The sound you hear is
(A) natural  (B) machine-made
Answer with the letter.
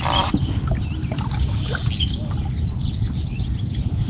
A